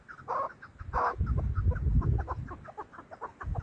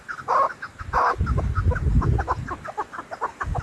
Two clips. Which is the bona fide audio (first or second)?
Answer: first